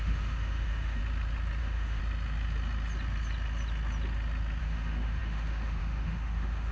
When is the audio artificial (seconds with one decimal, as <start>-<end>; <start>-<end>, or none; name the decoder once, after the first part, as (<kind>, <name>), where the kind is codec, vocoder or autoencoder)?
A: 0.0-1.0 (autoencoder, DAC-VAE); 1.6-2.0; 4.6-6.7